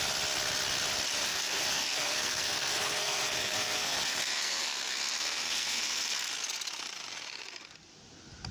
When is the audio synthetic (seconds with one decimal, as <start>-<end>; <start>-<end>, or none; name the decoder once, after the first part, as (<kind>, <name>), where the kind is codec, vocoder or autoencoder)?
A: 1.3-6.3 (codec, SNAC)